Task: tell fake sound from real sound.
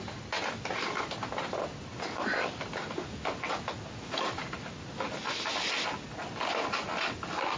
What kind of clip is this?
real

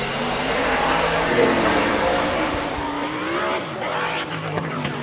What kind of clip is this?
fake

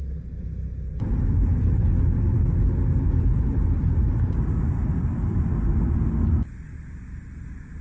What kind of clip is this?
real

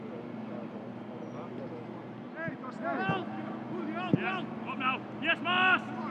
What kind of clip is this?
real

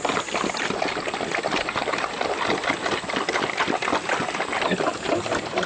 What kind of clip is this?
real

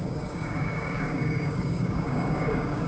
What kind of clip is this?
fake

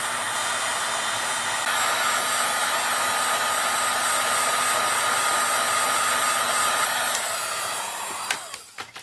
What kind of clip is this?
real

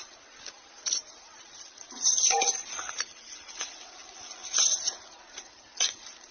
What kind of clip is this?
fake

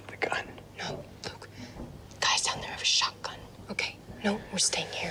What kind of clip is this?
real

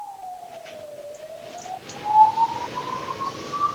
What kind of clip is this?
real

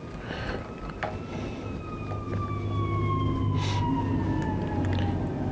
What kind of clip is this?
real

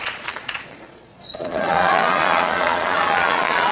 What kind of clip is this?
fake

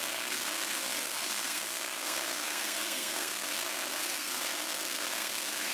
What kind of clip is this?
fake